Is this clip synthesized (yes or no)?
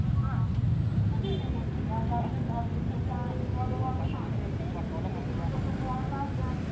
no